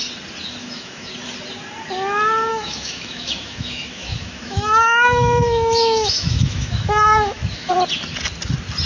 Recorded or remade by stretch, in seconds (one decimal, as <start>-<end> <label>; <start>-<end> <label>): 0.0-0.6 recorded; 0.6-1.1 remade; 1.1-2.5 recorded; 2.5-7.7 remade; 7.7-8.9 recorded